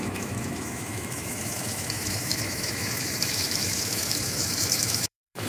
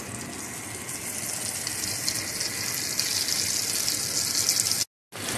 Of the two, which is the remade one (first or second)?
first